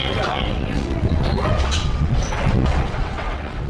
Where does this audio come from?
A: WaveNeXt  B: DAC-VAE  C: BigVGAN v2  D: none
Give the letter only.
A